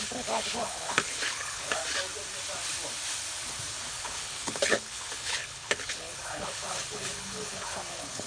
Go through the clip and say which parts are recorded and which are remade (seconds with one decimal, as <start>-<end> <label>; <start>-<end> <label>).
0.0-1.8 remade; 1.8-3.9 recorded; 3.9-8.3 remade